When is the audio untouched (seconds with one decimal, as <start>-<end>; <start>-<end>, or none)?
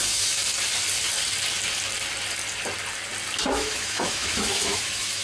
0.4-3.5